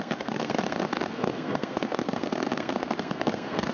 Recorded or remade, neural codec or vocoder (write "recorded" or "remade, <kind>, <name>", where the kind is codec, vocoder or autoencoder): remade, codec, SNAC